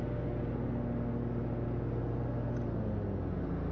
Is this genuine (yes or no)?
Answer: yes